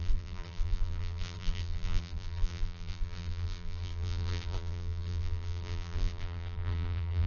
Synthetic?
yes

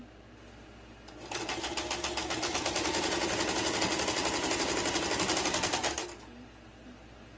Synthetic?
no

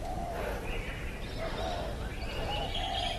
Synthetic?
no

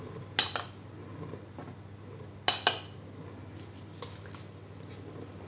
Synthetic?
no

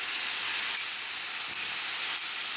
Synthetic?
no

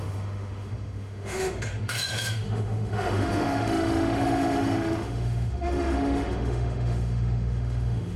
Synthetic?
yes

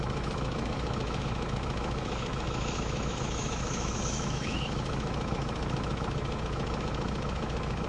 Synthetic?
yes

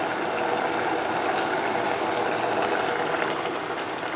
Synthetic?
no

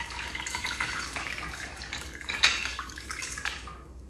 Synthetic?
yes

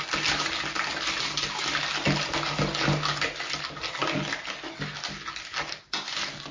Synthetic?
no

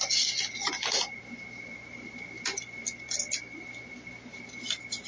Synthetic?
no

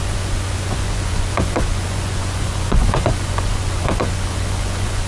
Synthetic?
yes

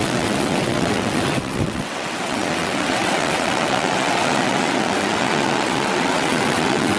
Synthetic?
yes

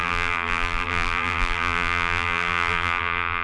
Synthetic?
yes